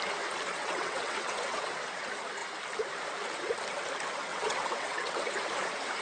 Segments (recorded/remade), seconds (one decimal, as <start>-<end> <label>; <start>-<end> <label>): 0.0-0.6 recorded; 0.6-1.8 remade; 1.8-4.3 recorded; 4.3-5.3 remade; 5.3-6.0 recorded

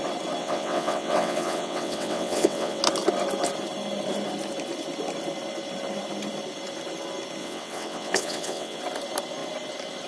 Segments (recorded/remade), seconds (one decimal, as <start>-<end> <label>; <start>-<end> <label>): 0.0-0.4 recorded; 0.4-2.8 remade; 2.8-7.4 recorded; 7.4-8.8 remade; 8.8-10.1 recorded

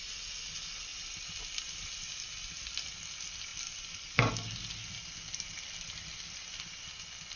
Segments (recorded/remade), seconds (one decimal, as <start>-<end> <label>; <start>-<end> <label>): 0.0-7.4 recorded

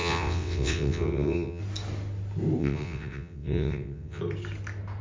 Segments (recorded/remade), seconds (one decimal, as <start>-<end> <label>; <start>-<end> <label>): 0.0-1.6 remade; 1.6-2.6 recorded; 2.6-4.2 remade; 4.2-5.0 recorded

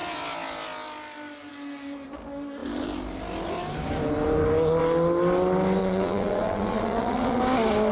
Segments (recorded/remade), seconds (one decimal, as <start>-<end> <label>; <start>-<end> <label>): 0.0-5.8 recorded; 5.8-7.4 remade; 7.4-7.9 recorded

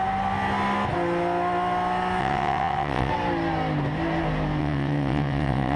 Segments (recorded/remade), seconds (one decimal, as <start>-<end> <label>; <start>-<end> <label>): 0.0-2.2 recorded; 2.2-3.1 remade; 3.1-4.6 recorded; 4.6-5.8 remade

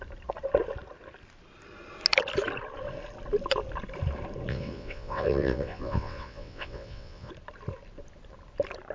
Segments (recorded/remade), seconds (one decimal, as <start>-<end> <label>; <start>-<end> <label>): 0.0-4.5 recorded; 4.5-7.3 remade; 7.3-8.9 recorded